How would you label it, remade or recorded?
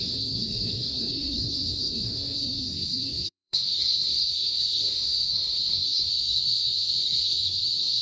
remade